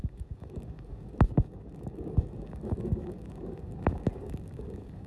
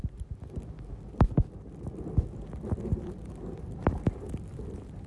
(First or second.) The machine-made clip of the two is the first